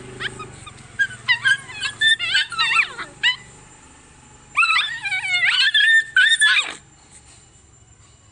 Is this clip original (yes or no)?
yes